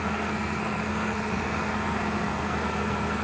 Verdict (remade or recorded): remade